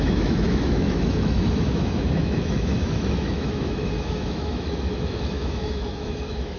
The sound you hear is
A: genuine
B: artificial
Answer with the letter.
B